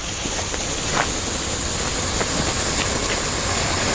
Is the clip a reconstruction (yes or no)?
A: no